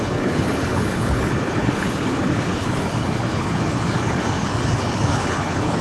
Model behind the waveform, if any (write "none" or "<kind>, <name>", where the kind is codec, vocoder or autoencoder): codec, HILCodec